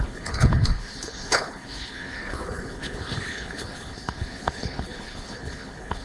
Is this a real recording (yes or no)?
no